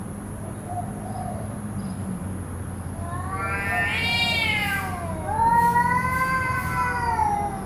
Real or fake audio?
real